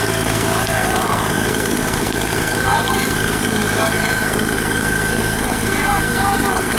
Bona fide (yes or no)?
no